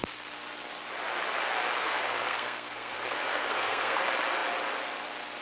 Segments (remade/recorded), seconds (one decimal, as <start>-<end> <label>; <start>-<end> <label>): 0.0-1.8 recorded; 1.8-4.0 remade; 4.0-5.4 recorded